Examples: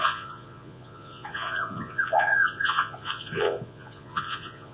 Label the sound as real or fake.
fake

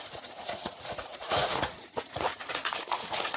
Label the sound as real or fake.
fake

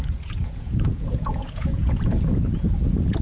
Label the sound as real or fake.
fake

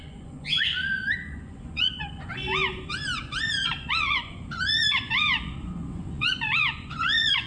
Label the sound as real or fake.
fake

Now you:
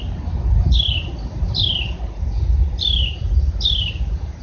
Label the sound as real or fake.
real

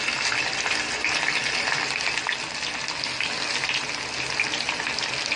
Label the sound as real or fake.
real